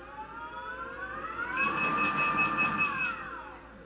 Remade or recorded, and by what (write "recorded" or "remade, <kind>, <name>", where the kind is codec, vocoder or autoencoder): recorded